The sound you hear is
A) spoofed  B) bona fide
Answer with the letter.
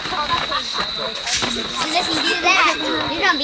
B